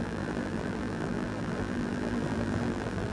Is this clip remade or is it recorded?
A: remade